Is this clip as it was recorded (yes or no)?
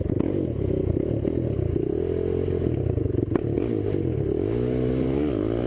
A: yes